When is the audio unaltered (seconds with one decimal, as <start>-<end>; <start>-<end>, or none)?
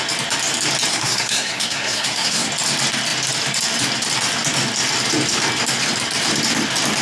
0.0-0.9; 2.5-7.0